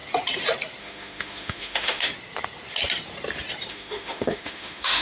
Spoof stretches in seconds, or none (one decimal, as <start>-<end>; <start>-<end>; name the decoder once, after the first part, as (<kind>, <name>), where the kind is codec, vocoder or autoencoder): 0.8-2.1 (autoencoder, DAC-VAE); 3.7-5.0